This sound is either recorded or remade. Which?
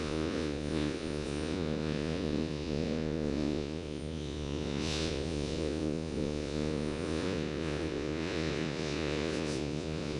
remade